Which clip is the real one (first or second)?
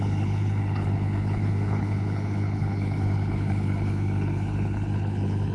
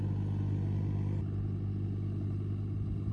second